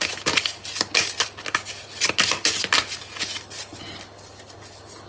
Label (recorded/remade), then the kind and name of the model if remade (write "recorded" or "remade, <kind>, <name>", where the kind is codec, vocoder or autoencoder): recorded